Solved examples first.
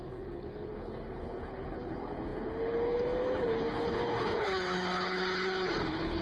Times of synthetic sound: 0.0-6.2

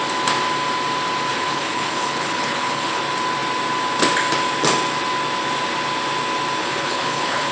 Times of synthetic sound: 1.3-3.0; 6.6-7.5

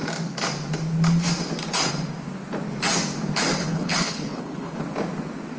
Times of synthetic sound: 3.6-4.8

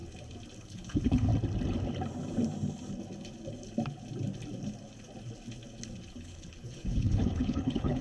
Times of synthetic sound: 0.6-1.3; 6.1-8.0